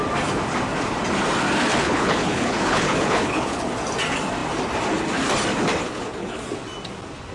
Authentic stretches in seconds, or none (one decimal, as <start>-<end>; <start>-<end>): 0.0-1.7; 3.7-5.8; 6.4-7.3